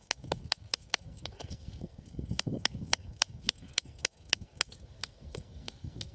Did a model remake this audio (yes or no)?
yes